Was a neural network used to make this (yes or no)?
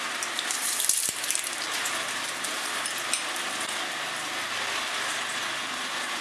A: no